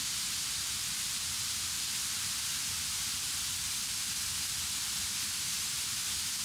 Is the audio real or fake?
fake